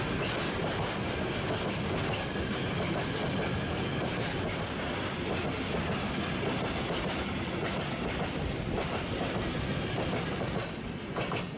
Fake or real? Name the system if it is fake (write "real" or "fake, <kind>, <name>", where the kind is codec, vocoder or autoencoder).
real